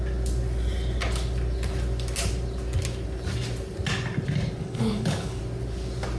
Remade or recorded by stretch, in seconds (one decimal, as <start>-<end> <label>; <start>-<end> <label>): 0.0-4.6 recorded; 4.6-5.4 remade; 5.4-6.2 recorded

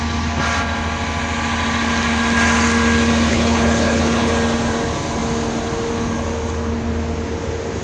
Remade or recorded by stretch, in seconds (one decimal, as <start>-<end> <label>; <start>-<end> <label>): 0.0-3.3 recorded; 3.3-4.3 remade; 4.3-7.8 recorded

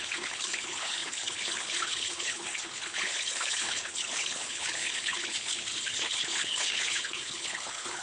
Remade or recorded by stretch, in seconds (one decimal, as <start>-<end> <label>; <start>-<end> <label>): 0.0-8.0 remade

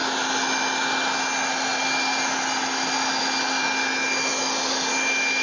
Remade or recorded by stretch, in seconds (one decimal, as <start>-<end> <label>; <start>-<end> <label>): 0.0-5.4 recorded